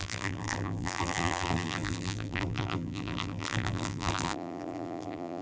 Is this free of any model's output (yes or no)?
no